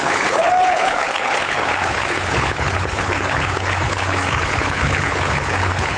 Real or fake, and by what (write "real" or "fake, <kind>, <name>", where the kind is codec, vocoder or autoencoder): fake, codec, HILCodec